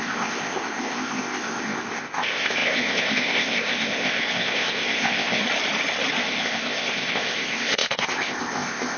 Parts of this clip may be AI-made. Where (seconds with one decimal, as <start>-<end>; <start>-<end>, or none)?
0.0-5.4; 6.2-9.0